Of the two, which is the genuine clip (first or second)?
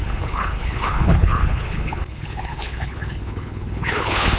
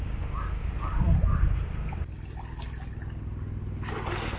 second